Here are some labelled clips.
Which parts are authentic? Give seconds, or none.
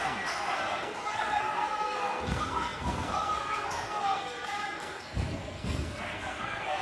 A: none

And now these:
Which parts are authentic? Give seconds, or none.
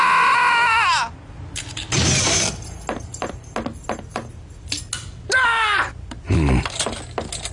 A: 0.0-7.5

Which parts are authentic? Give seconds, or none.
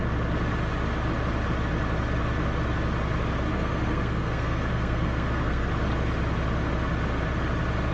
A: 0.0-3.5; 5.7-7.9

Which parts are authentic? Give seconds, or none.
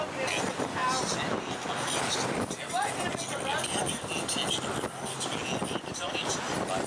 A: 0.0-5.6; 6.3-6.9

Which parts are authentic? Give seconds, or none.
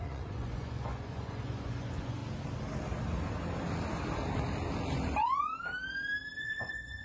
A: 2.2-6.4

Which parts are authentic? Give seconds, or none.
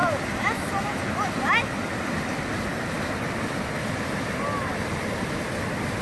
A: 0.0-6.0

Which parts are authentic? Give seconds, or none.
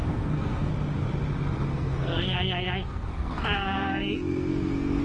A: 0.7-1.7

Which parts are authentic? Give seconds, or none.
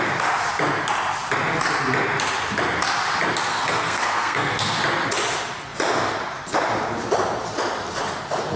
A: 0.0-3.5; 4.8-8.6